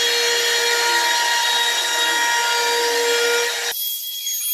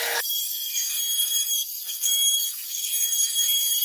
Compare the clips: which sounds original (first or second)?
first